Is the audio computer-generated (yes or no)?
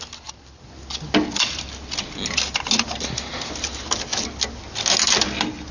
no